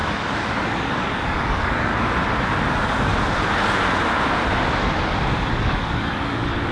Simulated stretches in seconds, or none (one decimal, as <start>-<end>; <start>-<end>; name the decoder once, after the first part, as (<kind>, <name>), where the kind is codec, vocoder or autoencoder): 0.0-1.9 (codec, DAC); 2.7-3.1; 5.5-6.7